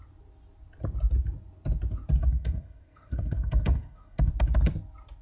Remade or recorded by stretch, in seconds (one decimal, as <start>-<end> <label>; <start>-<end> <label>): 0.0-2.2 recorded; 2.2-4.3 remade; 4.3-5.2 recorded